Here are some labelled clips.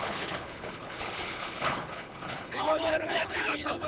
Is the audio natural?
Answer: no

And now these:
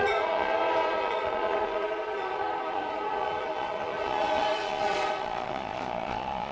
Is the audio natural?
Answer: no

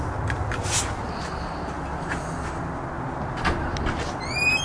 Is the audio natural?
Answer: yes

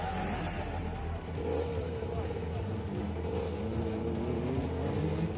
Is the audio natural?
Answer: yes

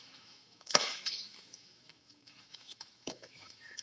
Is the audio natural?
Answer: no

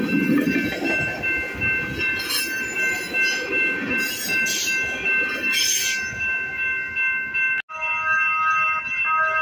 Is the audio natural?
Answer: yes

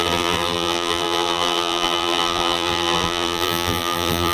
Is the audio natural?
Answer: no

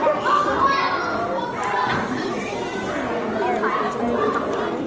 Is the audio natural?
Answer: yes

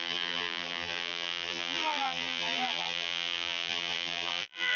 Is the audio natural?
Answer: no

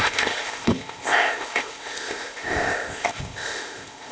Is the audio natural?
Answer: no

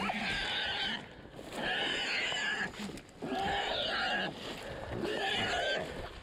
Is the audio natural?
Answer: yes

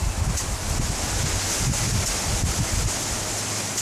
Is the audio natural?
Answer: yes